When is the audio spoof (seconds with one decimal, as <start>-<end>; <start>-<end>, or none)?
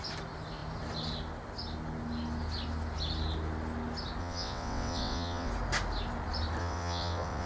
4.2-5.5; 6.6-7.5